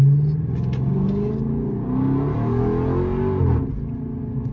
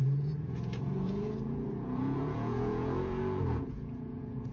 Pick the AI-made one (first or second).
second